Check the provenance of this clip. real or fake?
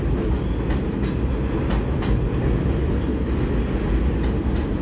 real